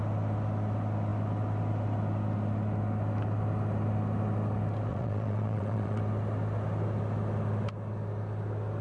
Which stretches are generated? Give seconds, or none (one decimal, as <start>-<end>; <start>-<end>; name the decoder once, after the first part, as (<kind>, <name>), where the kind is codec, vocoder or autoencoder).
4.9-6.0 (vocoder, WaveNeXt)